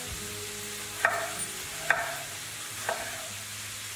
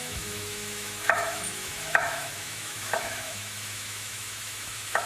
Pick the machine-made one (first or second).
second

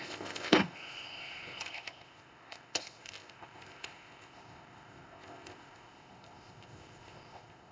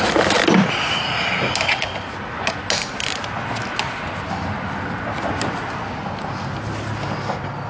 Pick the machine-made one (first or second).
first